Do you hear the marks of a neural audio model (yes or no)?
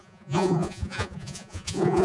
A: yes